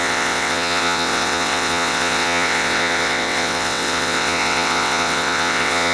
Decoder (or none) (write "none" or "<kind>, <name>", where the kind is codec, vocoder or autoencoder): vocoder, WaveNeXt